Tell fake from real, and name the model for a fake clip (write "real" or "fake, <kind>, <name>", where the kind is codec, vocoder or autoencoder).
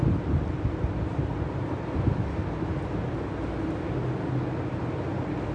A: real